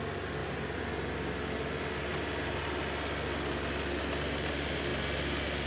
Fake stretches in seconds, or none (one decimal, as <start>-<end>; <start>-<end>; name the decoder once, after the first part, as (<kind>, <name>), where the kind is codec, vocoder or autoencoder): 2.1-2.7 (vocoder, BigVGAN v2)